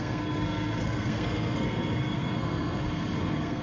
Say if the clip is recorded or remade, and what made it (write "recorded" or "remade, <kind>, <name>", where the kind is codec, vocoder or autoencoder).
remade, codec, SNAC